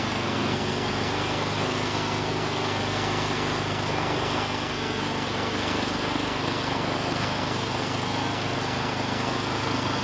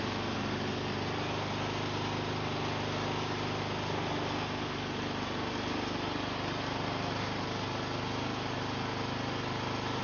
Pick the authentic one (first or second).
second